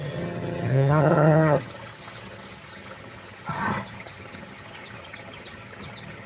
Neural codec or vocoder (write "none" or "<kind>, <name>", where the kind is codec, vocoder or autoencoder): vocoder, HiFi-GAN